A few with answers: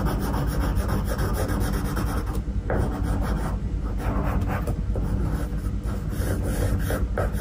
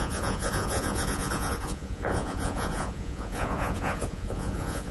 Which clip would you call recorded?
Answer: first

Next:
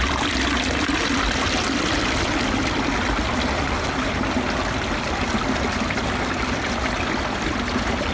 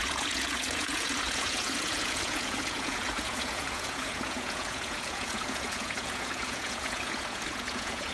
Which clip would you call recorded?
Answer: first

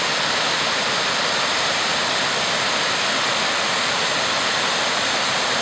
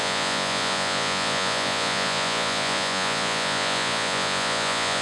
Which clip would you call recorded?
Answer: first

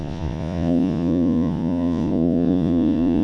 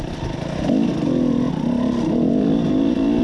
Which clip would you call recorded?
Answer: second